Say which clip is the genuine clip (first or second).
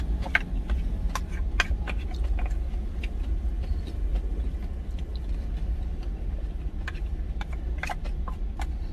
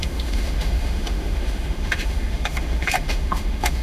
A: first